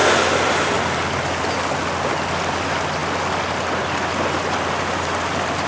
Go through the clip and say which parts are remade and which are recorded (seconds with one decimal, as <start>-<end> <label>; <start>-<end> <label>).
0.0-5.7 recorded